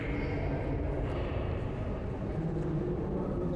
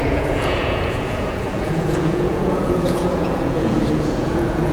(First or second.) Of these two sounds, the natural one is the first